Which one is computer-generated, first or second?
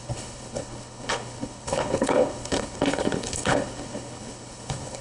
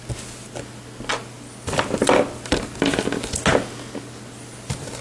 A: first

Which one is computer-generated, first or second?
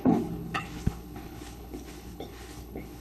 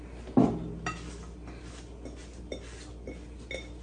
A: first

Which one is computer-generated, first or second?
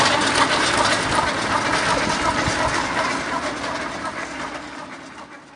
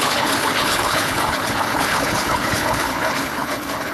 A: second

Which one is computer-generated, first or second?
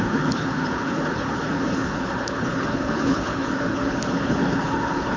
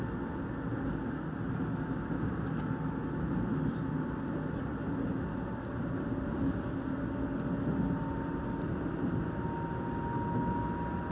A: first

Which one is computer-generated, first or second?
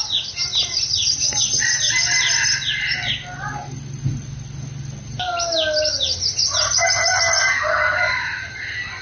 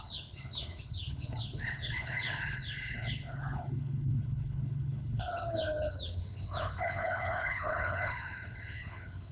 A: second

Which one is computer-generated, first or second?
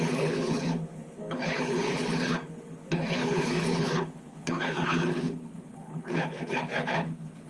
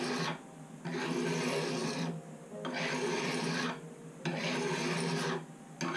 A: first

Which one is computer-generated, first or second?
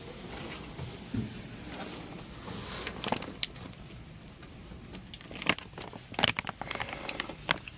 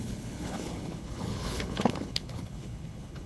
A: second